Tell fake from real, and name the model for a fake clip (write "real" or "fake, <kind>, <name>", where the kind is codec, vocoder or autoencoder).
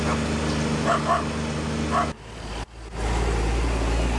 real